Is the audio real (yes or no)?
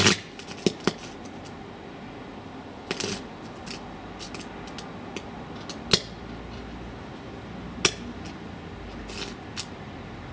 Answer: yes